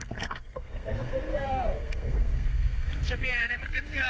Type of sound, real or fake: fake